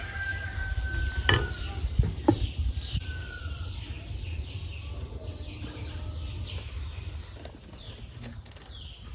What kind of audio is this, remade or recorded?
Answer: recorded